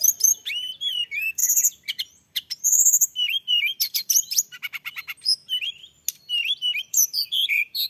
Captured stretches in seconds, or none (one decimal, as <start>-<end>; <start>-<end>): 5.4-6.8